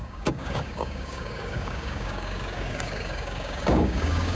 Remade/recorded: remade